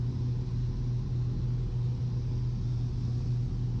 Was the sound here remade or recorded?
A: recorded